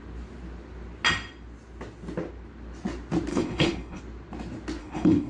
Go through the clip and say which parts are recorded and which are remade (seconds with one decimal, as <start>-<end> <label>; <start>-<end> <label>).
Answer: 0.0-3.3 recorded; 3.3-4.0 remade; 4.0-4.8 recorded; 4.8-5.3 remade